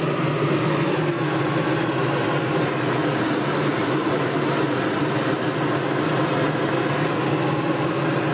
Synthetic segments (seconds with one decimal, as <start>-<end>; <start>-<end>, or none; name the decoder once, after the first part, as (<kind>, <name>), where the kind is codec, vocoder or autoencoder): 3.8-4.5 (vocoder, BigVGAN v2)